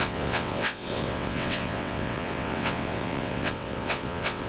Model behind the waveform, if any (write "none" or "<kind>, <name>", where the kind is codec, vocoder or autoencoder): vocoder, WaveNeXt